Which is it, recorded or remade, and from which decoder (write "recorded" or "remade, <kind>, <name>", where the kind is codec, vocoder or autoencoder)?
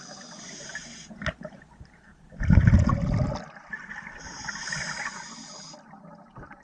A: recorded